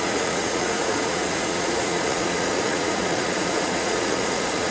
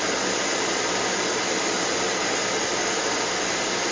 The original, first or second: second